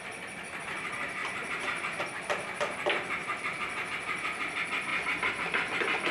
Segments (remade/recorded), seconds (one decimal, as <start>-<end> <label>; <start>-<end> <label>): 0.0-1.2 recorded; 1.2-2.0 remade; 2.0-6.1 recorded